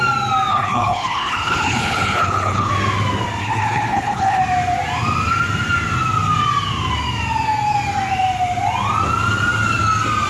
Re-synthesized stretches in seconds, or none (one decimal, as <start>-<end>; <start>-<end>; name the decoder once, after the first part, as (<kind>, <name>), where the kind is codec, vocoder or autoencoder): 0.5-2.7 (codec, HILCodec); 3.4-4.4